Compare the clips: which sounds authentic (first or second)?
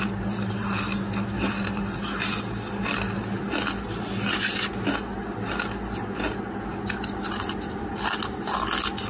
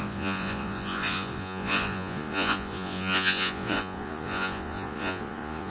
first